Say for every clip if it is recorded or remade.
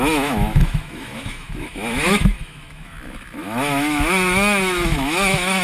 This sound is remade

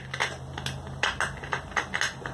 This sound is recorded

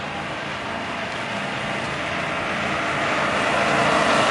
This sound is recorded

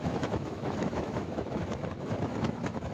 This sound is remade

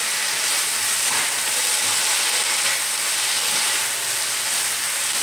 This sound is recorded